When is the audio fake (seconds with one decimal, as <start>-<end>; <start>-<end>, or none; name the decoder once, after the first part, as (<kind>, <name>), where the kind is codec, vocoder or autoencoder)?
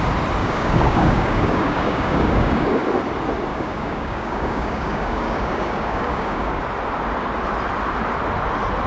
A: 0.4-2.8 (codec, DAC); 3.5-6.6